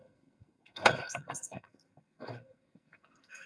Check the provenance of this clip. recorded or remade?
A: remade